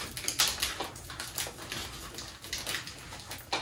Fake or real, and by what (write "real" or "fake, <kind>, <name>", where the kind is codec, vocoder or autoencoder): real